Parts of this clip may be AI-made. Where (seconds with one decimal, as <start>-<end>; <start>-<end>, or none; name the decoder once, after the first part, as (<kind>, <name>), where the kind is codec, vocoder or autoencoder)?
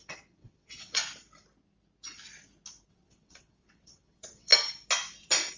0.0-1.0 (vocoder, WaveNeXt); 2.9-4.5